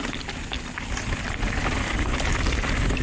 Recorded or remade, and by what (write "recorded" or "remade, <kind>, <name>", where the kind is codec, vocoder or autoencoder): recorded